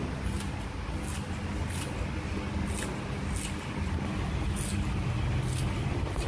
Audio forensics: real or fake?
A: real